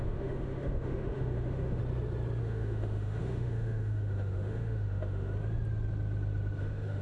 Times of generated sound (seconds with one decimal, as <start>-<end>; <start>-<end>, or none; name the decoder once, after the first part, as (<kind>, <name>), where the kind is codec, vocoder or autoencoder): 0.0-1.8 (autoencoder, DAC-VAE); 2.4-5.3; 6.6-7.0

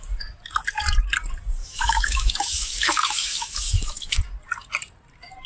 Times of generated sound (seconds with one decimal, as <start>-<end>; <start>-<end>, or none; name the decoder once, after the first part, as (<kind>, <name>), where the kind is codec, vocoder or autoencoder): 1.6-4.2 (autoencoder, DAC-VAE)

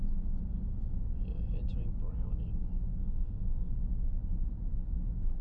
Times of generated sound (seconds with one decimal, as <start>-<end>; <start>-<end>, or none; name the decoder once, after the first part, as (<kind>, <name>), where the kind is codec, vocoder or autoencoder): 3.0-3.7 (autoencoder, DAC-VAE)

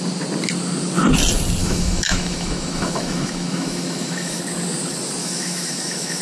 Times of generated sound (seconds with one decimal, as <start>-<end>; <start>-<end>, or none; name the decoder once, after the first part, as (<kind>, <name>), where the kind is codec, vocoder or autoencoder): 1.6-4.4 (autoencoder, DAC-VAE); 5.2-6.2